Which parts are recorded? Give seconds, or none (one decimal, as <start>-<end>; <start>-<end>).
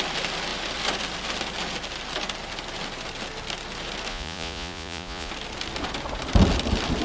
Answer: 0.0-4.1; 5.3-7.0